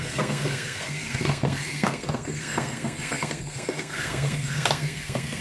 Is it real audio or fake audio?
fake